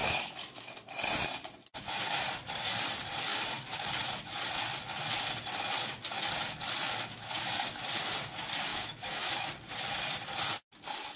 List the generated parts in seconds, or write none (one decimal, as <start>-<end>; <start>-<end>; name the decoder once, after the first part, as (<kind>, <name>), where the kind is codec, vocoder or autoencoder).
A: 0.0-0.7 (autoencoder, DAC-VAE); 8.7-9.5